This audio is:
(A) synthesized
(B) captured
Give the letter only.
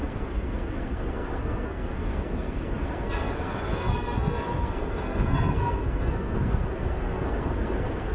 A